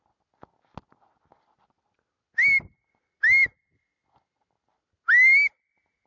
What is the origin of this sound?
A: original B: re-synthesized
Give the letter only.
A